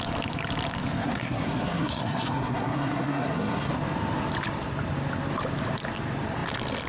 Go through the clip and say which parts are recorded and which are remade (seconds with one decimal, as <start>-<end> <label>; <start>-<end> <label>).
0.0-1.0 recorded; 1.0-3.7 remade; 3.7-6.9 recorded